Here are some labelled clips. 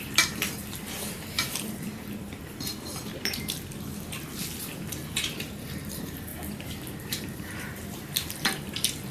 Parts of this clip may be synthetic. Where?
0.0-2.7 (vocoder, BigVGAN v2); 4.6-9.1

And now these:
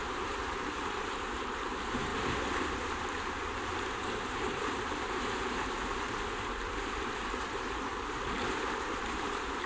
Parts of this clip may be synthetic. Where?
0.0-7.9 (vocoder, BigVGAN v2); 8.5-9.7

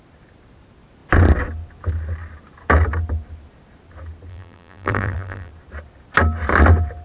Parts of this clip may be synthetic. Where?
4.3-5.5 (vocoder, BigVGAN v2)